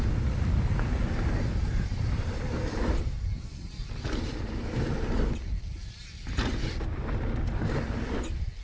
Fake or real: real